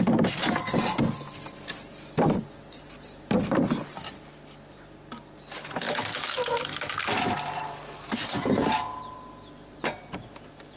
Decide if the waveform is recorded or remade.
recorded